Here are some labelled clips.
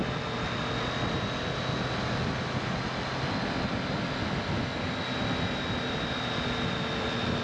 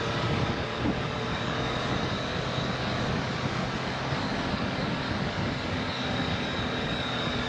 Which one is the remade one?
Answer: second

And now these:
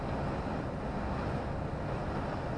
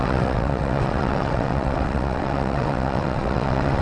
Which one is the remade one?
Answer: second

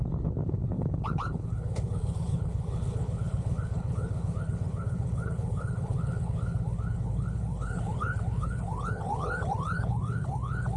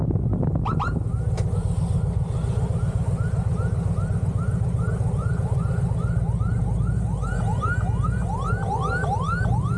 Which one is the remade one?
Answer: first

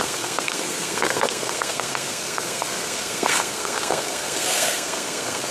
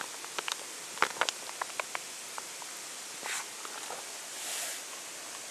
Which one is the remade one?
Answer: first